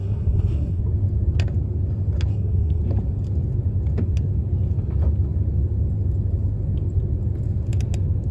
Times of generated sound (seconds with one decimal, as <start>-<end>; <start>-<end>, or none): 0.0-0.8; 2.3-2.8